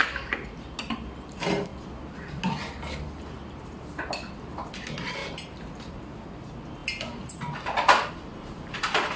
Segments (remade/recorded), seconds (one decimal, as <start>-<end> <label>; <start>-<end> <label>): 0.0-0.8 recorded; 0.8-1.7 remade; 1.7-3.1 recorded; 3.1-5.2 remade; 5.2-6.3 recorded; 6.3-9.2 remade